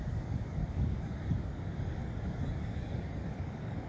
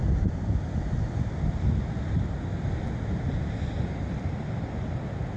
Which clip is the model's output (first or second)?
first